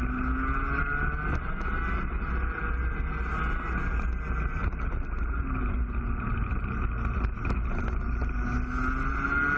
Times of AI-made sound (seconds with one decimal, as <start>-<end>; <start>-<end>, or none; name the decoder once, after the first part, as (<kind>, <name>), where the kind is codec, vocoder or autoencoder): none